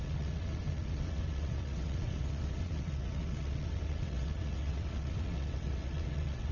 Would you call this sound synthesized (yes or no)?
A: yes